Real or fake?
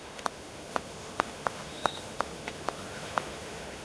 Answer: fake